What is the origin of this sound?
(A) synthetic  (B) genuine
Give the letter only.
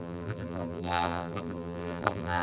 A